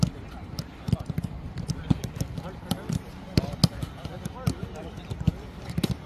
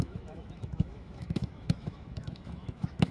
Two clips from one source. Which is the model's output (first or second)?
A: second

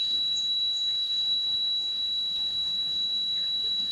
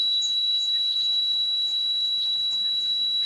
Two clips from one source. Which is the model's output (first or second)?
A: first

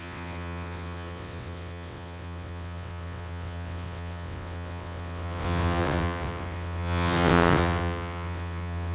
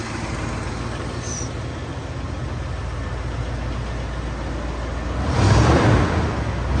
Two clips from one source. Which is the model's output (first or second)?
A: first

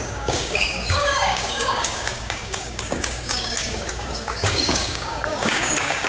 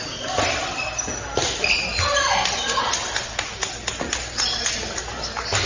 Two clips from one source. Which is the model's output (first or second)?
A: first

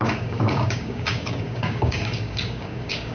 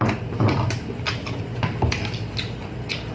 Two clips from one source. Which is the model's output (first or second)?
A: first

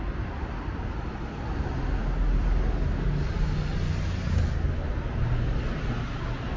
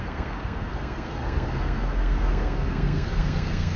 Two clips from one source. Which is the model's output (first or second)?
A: second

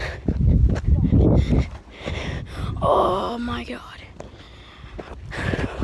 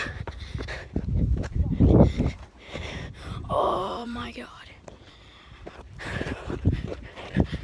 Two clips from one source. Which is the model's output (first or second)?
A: second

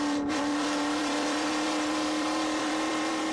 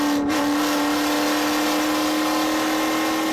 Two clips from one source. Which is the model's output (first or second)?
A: first